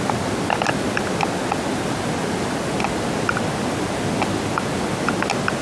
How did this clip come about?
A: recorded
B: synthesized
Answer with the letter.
A